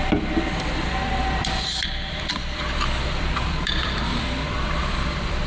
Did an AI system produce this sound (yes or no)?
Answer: yes